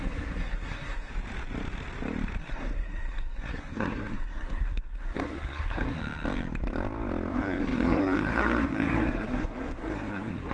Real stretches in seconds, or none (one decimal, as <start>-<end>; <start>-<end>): 1.1-2.4; 6.0-7.3